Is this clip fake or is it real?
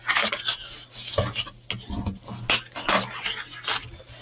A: real